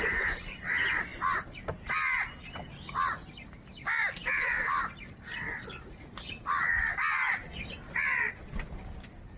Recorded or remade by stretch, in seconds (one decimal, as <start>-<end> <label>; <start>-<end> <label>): 0.0-9.4 recorded